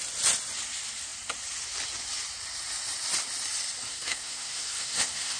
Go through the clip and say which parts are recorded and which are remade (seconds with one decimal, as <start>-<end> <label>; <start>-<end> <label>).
0.0-3.9 recorded; 3.9-5.4 remade